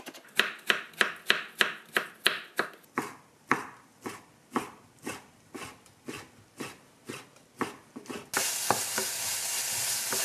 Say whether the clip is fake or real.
real